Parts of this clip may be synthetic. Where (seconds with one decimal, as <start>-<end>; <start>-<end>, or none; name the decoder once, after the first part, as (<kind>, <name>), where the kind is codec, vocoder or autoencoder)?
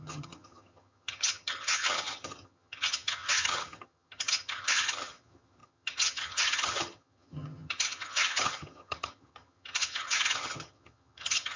0.0-11.6 (vocoder, HiFi-GAN)